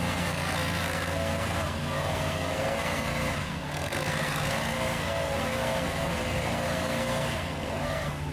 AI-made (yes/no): yes